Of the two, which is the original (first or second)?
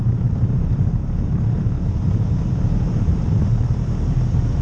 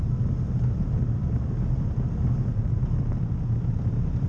second